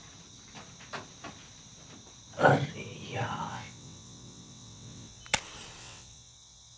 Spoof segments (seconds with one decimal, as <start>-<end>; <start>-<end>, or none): 3.5-5.2; 5.8-6.8